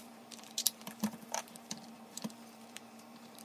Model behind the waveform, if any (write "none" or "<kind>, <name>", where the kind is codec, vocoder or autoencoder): vocoder, BigVGAN v2